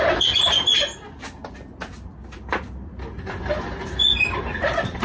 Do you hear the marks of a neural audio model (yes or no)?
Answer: no